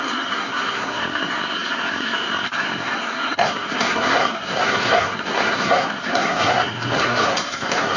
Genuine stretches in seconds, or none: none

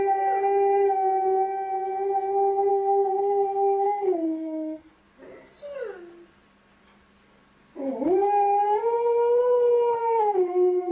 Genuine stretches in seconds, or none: 0.0-2.7; 4.9-10.0

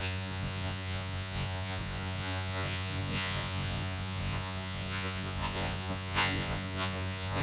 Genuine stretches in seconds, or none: none

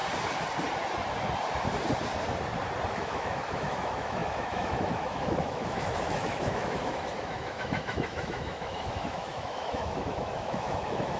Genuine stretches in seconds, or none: 0.0-2.9

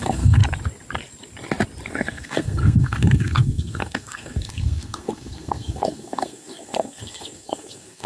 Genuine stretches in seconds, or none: 0.4-1.9

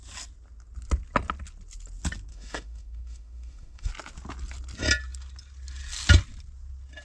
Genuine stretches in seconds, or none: 0.0-2.3; 3.9-7.0